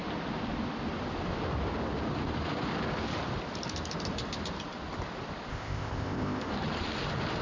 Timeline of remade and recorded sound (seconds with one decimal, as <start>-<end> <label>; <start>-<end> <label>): 0.0-5.5 recorded; 5.5-6.5 remade; 6.5-7.4 recorded